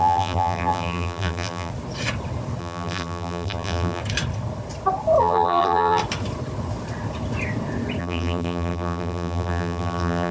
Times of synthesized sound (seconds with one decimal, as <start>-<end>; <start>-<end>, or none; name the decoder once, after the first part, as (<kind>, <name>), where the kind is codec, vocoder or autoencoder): 0.0-1.7 (vocoder, BigVGAN v2); 2.6-4.0; 5.2-6.0; 8.0-10.3